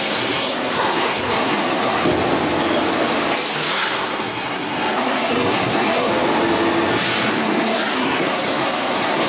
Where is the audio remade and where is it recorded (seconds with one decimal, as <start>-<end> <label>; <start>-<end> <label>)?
0.0-2.0 remade; 2.0-3.7 recorded; 3.7-6.1 remade; 6.1-7.3 recorded; 7.3-9.3 remade

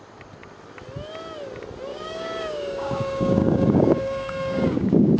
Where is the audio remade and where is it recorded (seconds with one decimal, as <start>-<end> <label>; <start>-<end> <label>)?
0.0-1.9 recorded; 1.9-5.2 remade

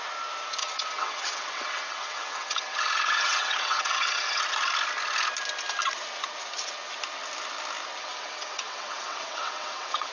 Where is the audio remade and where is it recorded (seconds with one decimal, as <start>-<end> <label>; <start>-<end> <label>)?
0.0-0.6 recorded; 0.6-4.4 remade; 4.4-8.0 recorded; 8.0-10.1 remade

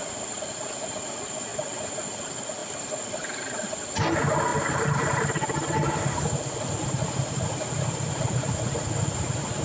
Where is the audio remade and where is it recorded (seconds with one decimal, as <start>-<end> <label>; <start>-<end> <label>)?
0.0-2.6 recorded; 2.6-3.7 remade; 3.7-4.5 recorded; 4.5-5.5 remade; 5.5-9.6 recorded

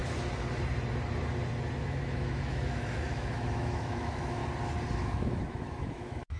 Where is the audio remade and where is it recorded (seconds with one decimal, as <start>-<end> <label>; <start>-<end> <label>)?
0.0-1.8 recorded; 1.8-4.4 remade; 4.4-5.0 recorded; 5.0-6.4 remade